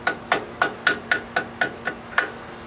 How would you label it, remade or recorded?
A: recorded